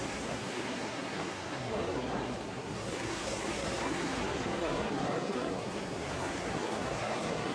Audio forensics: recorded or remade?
remade